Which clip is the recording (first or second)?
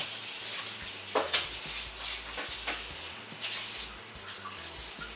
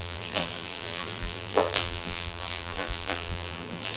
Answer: first